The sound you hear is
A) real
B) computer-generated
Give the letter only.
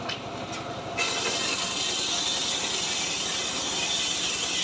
A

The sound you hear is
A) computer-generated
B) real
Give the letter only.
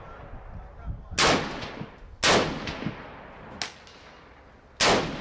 B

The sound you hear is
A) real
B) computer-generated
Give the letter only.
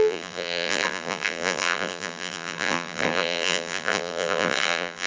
B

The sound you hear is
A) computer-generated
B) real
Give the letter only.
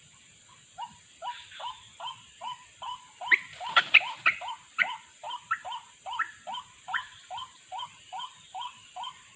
A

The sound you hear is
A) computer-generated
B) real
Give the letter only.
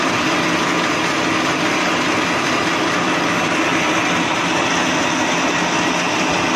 B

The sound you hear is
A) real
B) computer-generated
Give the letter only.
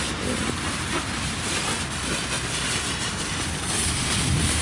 B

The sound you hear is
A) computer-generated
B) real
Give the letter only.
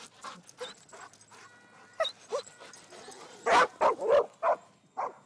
B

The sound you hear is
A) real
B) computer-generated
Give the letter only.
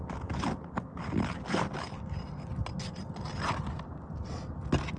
A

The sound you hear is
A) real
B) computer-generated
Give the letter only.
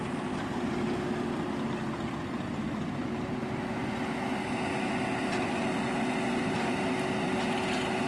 A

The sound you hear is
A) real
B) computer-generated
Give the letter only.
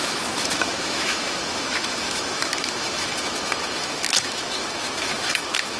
B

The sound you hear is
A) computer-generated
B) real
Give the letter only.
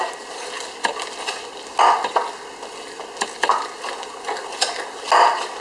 B